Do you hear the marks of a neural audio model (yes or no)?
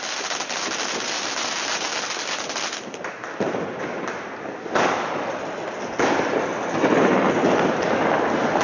no